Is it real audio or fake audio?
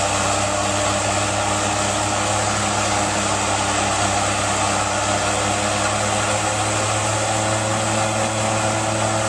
real